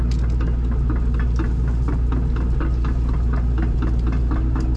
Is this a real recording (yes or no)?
yes